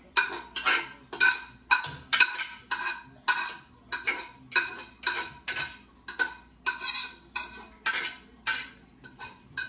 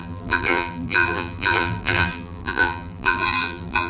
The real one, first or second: first